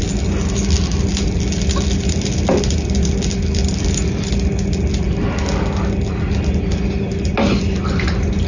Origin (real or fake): real